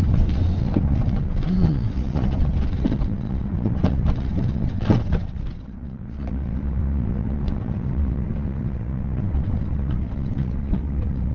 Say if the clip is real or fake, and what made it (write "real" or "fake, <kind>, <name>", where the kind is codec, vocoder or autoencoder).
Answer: fake, vocoder, WaveNeXt